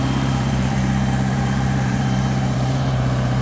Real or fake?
fake